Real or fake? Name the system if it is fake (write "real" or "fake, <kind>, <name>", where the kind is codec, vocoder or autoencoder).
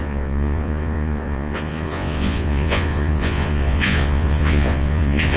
fake, vocoder, Vocos